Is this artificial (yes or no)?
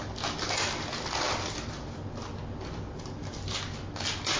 no